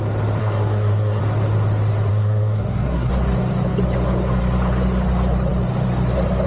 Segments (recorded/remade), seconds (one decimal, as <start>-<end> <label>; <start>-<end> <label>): 0.0-0.4 recorded; 0.4-1.2 remade; 1.2-2.1 recorded; 2.1-3.1 remade; 3.1-6.5 recorded